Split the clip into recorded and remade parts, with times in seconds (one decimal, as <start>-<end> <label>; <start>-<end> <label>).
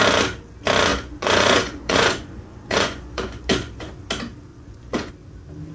0.0-0.9 recorded; 0.9-3.9 remade; 3.9-4.5 recorded; 4.5-5.1 remade; 5.1-5.7 recorded